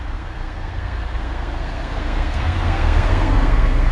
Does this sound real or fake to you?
fake